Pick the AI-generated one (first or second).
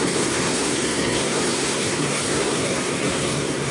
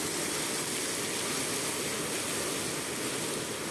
first